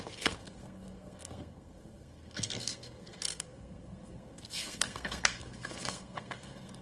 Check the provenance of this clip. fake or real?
fake